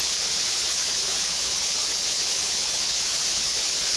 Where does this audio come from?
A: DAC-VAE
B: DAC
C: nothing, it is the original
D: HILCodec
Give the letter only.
D